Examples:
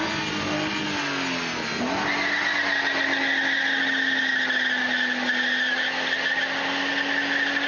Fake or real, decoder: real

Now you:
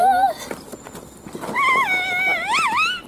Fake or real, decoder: real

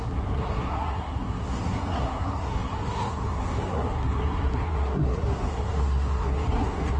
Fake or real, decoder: fake, codec, SNAC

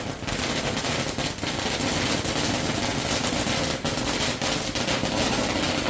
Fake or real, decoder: real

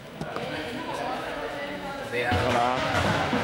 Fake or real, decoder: fake, autoencoder, DAC-VAE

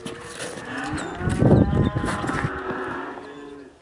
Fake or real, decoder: real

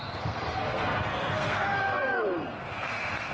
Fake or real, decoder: fake, codec, SNAC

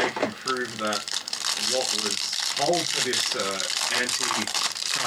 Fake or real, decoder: fake, vocoder, BigVGAN v2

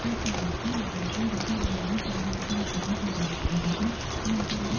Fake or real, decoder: real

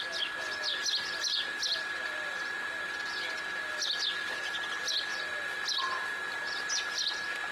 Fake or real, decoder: real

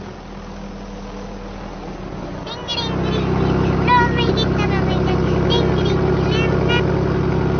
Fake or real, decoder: real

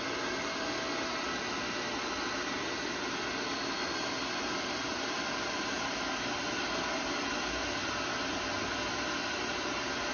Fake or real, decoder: real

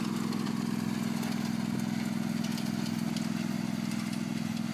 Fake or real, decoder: real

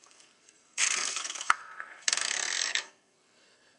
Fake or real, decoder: fake, codec, SNAC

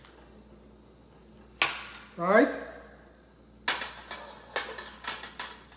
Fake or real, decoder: real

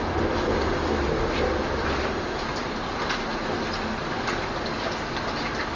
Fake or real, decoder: real